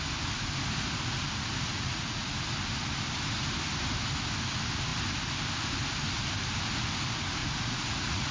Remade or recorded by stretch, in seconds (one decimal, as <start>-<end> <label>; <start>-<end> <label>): 0.0-1.7 recorded; 1.7-2.3 remade; 2.3-7.4 recorded; 7.4-8.3 remade